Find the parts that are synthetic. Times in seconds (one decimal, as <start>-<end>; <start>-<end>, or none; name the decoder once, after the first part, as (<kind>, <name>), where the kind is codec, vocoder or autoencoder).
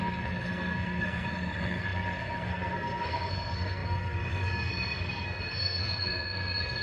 0.0-6.8 (codec, SNAC)